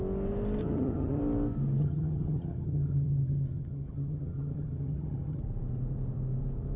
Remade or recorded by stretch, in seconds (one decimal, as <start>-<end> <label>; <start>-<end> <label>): 0.0-0.6 recorded; 0.6-1.2 remade; 1.2-1.8 recorded; 1.8-5.4 remade; 5.4-6.8 recorded